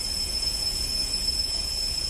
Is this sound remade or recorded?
remade